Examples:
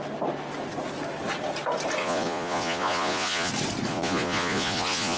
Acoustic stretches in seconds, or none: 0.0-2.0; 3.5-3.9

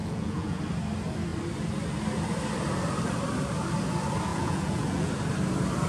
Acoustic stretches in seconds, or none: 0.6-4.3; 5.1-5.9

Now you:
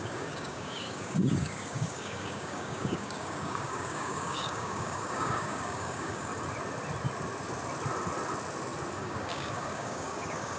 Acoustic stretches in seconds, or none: 6.3-9.0